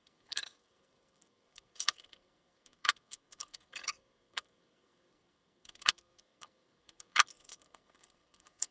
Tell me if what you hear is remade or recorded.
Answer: remade